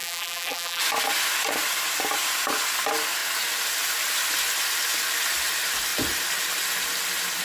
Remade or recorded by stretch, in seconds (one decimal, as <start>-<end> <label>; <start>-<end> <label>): 0.0-0.8 remade; 0.8-7.4 recorded